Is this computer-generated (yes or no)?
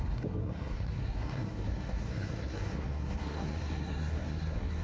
yes